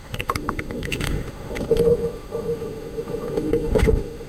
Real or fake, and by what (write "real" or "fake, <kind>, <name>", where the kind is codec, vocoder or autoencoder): fake, autoencoder, DAC-VAE